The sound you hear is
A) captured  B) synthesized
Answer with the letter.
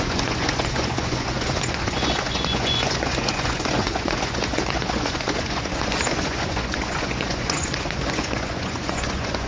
B